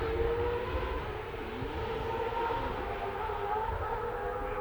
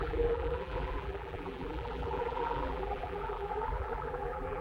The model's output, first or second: second